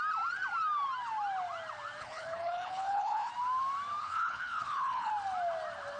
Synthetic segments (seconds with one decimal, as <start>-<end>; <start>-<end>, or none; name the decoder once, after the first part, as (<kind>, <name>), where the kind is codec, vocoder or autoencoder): 2.0-3.3 (codec, HILCodec); 4.0-5.1

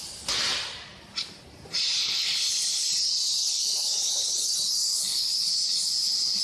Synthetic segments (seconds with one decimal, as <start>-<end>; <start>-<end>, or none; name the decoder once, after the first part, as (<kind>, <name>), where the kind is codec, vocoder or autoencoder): 2.0-2.9 (codec, HILCodec); 3.4-4.5; 4.9-6.4